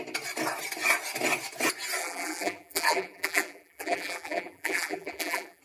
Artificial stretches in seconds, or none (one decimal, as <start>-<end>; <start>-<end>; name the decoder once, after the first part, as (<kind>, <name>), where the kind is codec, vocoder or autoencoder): 2.0-5.6 (vocoder, BigVGAN v2)

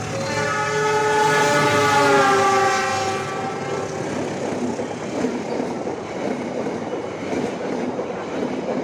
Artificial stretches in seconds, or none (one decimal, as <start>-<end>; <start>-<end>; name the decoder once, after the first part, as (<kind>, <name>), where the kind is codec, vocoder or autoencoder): 7.6-8.8 (vocoder, BigVGAN v2)

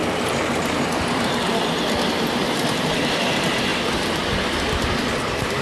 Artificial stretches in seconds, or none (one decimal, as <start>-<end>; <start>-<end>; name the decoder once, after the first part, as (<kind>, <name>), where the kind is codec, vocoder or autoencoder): 2.8-3.7 (vocoder, BigVGAN v2)

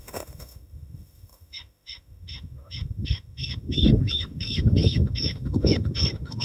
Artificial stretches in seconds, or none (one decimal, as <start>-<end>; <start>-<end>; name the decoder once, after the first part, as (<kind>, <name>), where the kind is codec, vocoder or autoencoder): 0.0-6.4 (autoencoder, DAC-VAE)